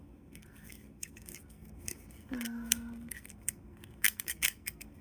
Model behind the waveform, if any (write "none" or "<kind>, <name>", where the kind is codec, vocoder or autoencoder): codec, SNAC